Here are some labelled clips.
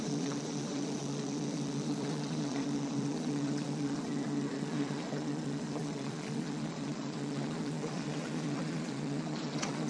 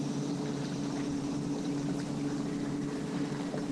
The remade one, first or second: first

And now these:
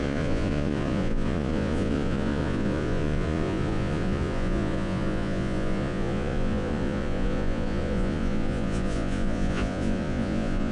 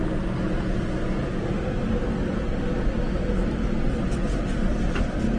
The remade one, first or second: first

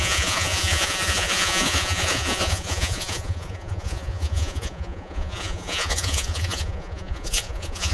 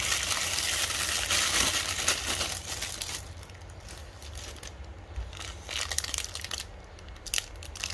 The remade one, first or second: first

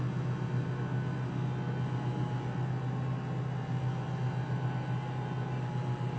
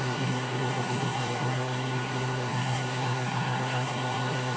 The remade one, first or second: second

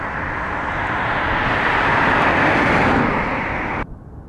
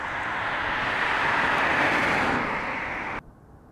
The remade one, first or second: first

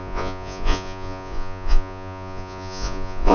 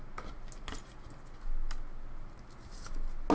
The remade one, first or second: first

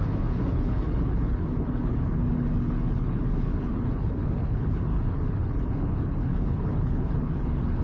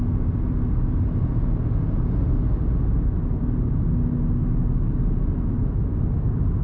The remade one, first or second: first